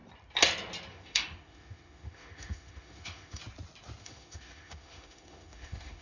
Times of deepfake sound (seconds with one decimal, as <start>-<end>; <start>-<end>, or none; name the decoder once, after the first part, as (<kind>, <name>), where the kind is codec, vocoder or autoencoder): 0.9-3.4 (autoencoder, DAC-VAE); 4.0-6.0